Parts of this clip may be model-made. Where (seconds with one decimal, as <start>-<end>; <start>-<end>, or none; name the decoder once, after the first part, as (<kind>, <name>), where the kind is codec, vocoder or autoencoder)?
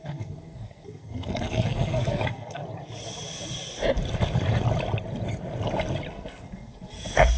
0.0-2.6 (codec, SNAC); 6.1-7.4